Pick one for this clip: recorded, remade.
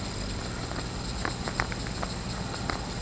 recorded